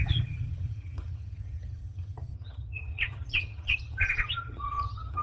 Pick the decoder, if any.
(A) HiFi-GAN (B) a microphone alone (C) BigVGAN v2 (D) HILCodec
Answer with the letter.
A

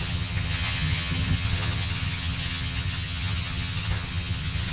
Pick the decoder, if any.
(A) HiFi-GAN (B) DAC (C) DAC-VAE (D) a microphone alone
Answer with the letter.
A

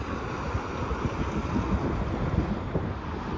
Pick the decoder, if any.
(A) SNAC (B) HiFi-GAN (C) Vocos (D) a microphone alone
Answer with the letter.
D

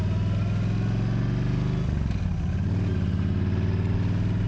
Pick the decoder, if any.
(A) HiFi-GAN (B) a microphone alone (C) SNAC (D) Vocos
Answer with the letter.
B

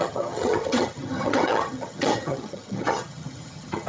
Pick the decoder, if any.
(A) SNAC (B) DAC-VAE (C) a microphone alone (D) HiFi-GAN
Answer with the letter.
D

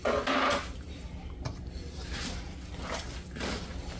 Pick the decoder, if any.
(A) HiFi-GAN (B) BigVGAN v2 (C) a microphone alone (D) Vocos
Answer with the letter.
C